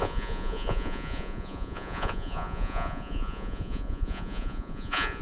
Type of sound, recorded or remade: remade